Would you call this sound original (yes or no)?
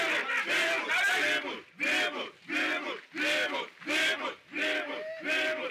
yes